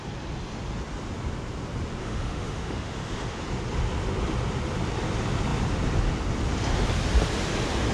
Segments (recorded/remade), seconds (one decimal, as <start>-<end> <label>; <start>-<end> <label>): 0.0-2.0 recorded; 2.0-3.4 remade; 3.4-7.9 recorded